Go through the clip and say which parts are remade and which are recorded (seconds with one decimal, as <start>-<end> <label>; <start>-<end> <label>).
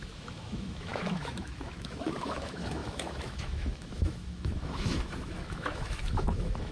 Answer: 0.0-6.7 remade